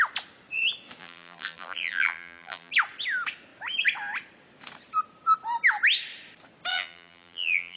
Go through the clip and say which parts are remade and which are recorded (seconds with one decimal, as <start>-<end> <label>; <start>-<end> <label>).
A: 0.0-1.0 recorded; 1.0-2.7 remade; 2.7-6.7 recorded; 6.7-7.8 remade